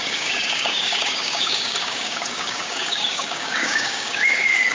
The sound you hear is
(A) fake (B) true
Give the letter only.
A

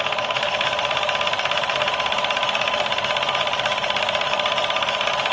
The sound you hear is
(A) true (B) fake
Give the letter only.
A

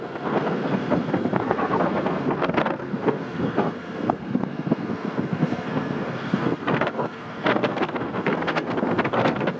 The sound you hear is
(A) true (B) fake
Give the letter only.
B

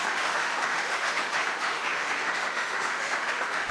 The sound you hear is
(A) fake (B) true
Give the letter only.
A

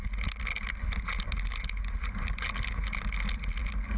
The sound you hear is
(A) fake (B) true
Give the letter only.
B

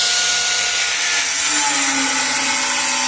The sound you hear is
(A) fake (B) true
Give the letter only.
B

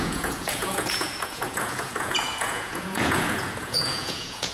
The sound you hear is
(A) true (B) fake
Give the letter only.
B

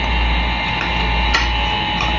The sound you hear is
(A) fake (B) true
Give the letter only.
B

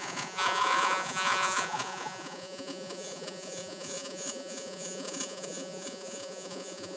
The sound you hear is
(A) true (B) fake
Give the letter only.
B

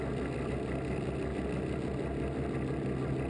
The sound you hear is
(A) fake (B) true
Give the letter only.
B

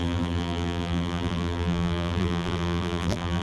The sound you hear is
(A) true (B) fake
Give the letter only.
B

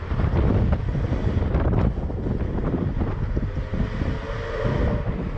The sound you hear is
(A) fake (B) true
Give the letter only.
B